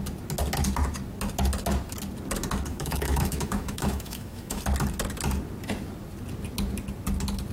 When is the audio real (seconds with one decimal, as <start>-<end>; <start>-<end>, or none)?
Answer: 0.0-2.7; 4.6-7.5